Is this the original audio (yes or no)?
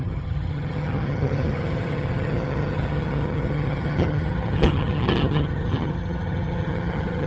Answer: no